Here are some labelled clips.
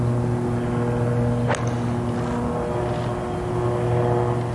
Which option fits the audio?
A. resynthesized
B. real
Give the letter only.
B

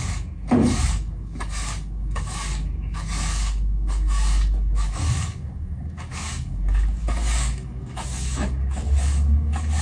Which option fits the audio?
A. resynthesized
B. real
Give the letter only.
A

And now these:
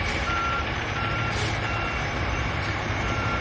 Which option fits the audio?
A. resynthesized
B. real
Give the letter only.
A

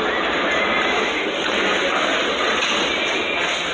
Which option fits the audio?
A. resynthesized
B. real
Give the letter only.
B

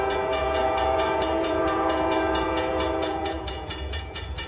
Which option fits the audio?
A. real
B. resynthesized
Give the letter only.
B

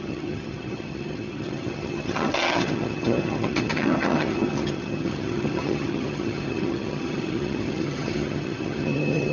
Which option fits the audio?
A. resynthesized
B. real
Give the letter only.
A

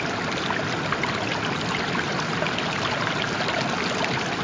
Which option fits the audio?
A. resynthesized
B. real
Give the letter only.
B